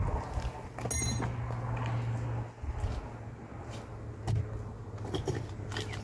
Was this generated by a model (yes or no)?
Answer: no